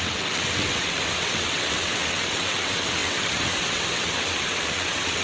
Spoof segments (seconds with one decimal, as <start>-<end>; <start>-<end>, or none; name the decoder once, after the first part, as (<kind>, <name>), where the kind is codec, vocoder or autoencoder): 0.0-5.2 (vocoder, WaveNeXt)